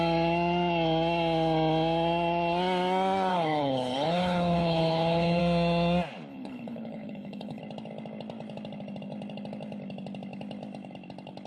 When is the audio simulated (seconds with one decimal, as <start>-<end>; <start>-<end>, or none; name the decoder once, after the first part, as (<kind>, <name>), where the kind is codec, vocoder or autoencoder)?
3.3-5.4 (codec, HILCodec); 6.3-7.6